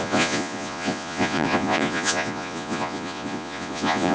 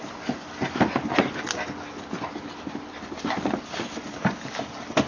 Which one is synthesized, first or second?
first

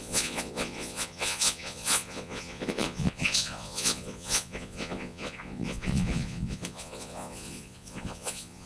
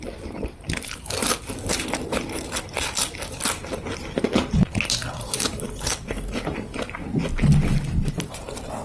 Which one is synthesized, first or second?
first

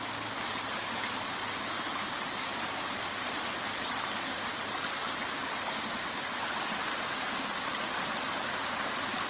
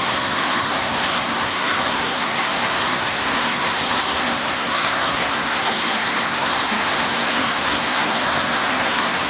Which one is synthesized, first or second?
second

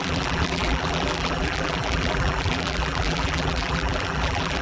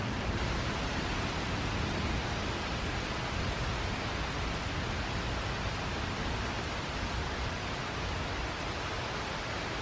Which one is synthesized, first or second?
first